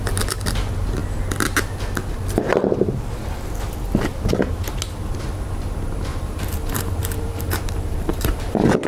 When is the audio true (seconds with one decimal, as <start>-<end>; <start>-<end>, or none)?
0.0-6.1; 7.6-8.1